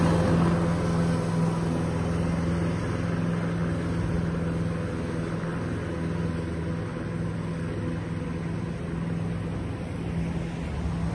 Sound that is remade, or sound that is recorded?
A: recorded